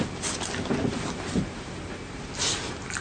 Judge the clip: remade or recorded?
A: recorded